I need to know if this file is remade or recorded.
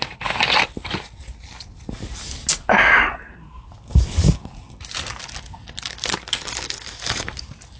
recorded